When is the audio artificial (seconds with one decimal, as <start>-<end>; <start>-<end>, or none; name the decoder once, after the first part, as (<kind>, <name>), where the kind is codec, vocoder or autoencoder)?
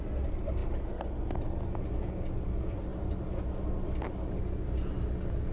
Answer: none